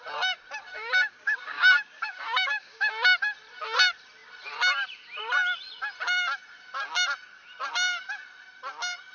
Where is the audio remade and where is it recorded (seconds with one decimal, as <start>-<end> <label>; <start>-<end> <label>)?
0.0-0.6 recorded; 0.6-2.9 remade; 2.9-9.1 recorded